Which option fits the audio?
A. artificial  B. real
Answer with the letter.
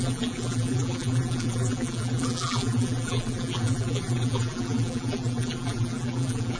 A